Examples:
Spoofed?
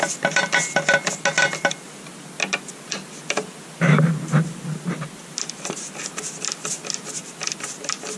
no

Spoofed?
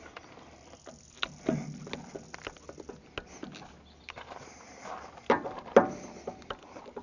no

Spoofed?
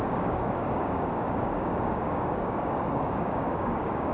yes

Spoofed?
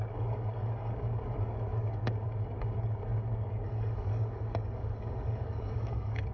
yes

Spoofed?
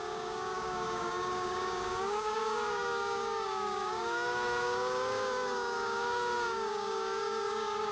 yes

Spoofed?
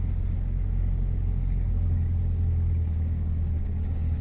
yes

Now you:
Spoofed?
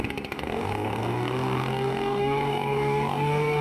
yes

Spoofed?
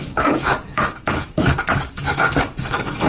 yes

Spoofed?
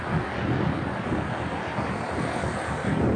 no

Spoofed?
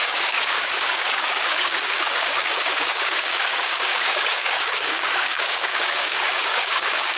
yes